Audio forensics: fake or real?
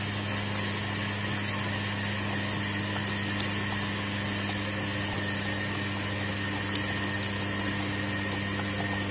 real